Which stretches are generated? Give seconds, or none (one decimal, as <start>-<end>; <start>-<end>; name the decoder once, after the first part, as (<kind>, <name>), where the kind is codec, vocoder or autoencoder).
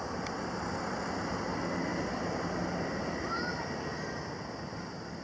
none